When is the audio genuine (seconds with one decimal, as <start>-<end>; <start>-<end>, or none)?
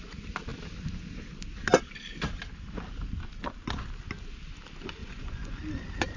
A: 0.0-5.0; 5.6-6.2